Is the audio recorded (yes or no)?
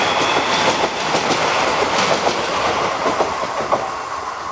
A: yes